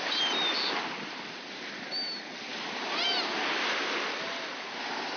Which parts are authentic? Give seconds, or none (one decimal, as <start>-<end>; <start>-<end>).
0.0-5.2